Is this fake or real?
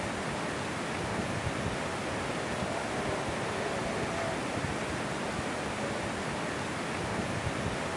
real